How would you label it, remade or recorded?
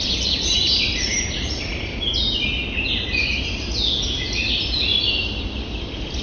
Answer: recorded